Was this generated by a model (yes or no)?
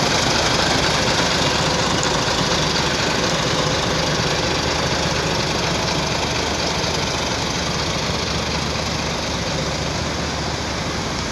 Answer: no